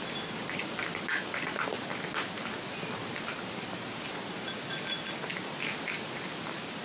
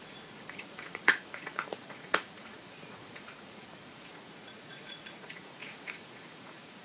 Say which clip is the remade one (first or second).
second